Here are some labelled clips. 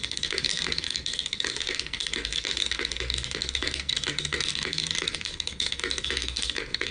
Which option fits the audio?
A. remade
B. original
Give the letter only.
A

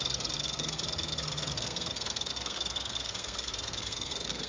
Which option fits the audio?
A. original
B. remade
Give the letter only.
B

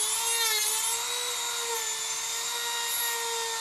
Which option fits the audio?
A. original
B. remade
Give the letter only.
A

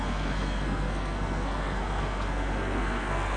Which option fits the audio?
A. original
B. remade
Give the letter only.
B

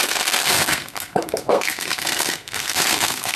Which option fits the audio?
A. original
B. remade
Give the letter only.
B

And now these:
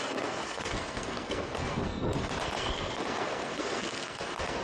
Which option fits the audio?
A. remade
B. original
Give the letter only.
A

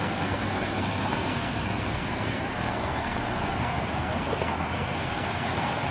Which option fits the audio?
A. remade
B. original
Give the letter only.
A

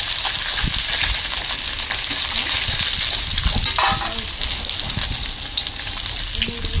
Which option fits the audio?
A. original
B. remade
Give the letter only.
A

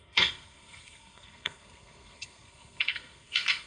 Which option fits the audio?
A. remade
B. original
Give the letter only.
A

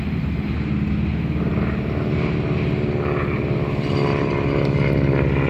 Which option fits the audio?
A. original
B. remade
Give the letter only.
A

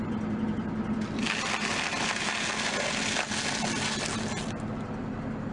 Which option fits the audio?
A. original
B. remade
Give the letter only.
A